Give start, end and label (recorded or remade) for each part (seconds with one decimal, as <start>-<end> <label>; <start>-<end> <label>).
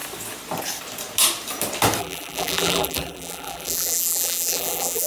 0.0-2.0 recorded; 2.0-5.1 remade